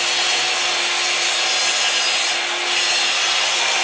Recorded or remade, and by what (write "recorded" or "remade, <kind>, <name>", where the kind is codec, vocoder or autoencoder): recorded